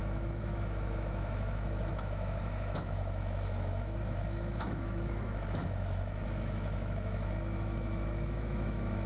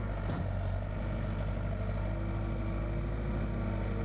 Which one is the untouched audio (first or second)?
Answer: second